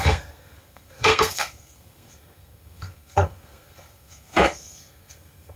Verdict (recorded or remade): remade